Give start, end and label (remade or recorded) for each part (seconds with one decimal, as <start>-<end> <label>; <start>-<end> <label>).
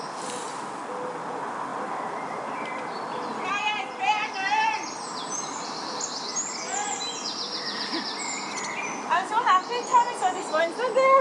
0.0-11.2 recorded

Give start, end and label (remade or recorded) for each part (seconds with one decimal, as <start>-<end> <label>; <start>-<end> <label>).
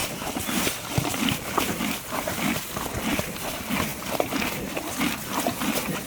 0.0-1.8 remade; 1.8-6.1 recorded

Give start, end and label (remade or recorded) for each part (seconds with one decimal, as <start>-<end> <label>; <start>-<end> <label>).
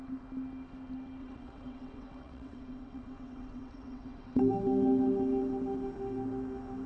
0.0-1.2 recorded; 1.2-4.4 remade; 4.4-6.9 recorded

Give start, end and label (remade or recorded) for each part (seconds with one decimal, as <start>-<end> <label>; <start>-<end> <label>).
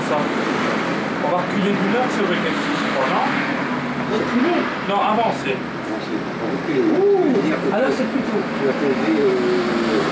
0.0-10.1 recorded